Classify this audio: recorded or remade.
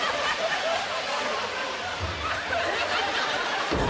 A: recorded